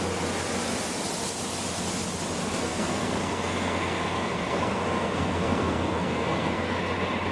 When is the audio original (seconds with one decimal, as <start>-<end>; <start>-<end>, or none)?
0.0-2.4; 6.8-7.3